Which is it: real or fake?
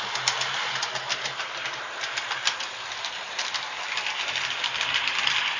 real